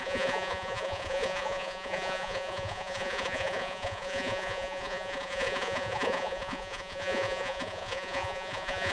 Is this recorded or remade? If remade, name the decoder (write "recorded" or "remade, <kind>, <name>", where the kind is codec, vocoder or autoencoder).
remade, vocoder, Vocos